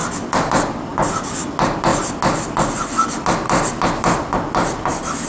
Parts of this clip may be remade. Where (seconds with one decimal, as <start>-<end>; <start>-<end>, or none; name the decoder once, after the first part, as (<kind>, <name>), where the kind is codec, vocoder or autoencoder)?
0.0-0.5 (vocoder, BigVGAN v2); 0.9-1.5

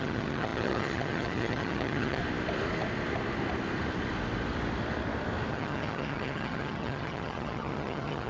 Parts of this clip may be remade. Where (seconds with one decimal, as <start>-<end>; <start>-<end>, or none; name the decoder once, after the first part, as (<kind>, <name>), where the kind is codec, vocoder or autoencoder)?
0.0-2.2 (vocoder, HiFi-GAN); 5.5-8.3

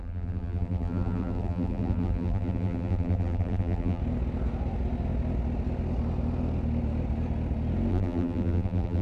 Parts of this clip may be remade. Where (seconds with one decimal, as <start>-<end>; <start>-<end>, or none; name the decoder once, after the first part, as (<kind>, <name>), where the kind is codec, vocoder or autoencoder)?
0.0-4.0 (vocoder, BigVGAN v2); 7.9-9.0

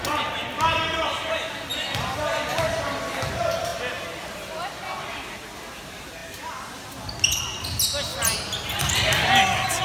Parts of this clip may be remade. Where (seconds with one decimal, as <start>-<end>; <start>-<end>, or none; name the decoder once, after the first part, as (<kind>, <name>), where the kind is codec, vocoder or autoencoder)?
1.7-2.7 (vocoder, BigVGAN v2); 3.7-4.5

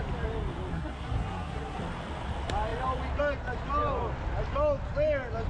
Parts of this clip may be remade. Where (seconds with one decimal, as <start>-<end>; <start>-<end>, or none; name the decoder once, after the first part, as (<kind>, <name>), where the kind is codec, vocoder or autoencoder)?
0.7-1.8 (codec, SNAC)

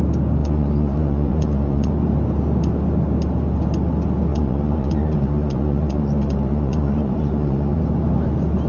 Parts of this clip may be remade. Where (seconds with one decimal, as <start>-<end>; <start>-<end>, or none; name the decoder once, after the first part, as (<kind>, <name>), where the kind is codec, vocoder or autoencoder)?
0.4-1.9 (vocoder, Vocos); 4.3-7.8

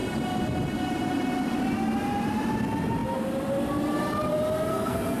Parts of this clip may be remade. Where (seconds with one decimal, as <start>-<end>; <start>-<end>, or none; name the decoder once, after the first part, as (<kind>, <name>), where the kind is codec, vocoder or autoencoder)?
4.7-5.2 (codec, SNAC)

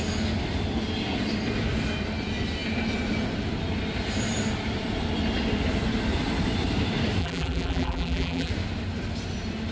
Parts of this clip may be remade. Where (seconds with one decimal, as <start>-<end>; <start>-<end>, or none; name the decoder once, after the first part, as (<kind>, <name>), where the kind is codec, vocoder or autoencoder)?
7.2-8.5 (vocoder, BigVGAN v2)